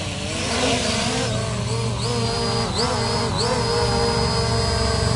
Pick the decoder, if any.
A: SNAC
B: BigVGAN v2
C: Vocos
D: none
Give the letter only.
D